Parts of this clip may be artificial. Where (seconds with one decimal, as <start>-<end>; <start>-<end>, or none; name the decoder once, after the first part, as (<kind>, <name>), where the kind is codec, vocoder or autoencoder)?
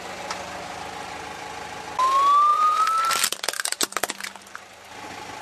2.5-3.0 (vocoder, Vocos)